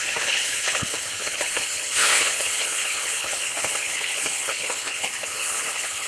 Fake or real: fake